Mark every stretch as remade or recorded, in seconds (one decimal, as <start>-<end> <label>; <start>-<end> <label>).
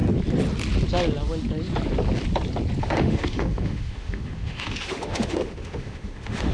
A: 0.0-2.8 recorded; 2.8-6.5 remade